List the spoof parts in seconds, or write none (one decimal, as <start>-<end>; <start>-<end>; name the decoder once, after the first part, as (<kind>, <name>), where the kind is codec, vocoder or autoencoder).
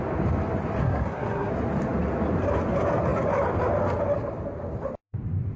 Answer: 0.8-1.5 (codec, SNAC)